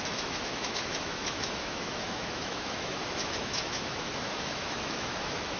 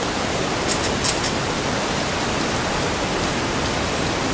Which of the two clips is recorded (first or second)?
second